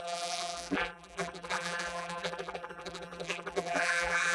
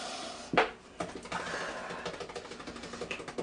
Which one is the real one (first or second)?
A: second